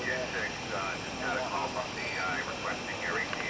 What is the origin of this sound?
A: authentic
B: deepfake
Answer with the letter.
A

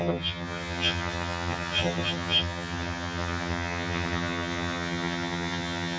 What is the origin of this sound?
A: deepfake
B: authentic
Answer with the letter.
A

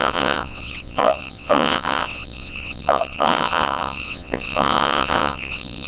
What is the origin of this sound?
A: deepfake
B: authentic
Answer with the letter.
A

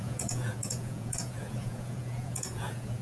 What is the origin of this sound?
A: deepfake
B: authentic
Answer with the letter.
A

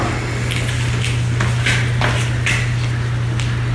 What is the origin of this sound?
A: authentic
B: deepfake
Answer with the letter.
A